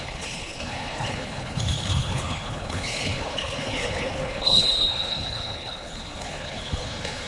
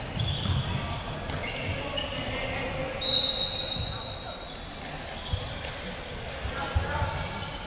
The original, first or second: second